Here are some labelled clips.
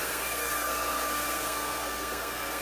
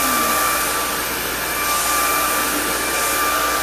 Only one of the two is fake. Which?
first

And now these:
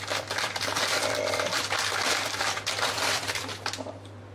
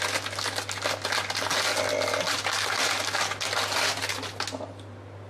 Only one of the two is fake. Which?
first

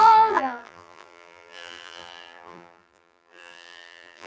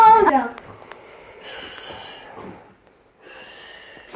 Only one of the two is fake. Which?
first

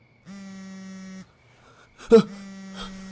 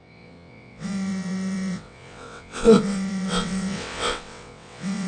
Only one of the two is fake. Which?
second